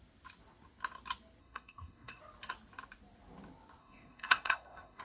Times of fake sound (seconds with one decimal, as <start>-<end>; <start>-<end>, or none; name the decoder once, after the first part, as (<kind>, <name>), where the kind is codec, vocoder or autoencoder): 1.4-2.2 (codec, SNAC); 3.8-5.0